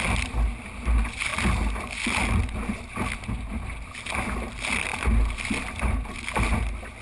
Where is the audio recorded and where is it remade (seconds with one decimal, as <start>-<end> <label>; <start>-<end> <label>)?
0.0-4.9 recorded; 4.9-6.5 remade; 6.5-7.0 recorded